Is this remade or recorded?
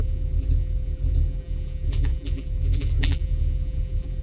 remade